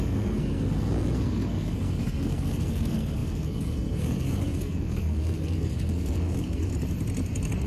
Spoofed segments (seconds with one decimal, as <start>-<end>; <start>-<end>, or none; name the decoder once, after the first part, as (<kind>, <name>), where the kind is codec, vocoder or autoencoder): 0.0-6.7 (codec, SNAC)